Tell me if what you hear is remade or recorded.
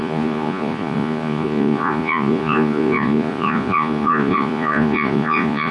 remade